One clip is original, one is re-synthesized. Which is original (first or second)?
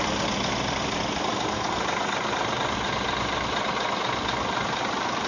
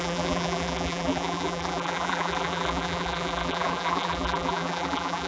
first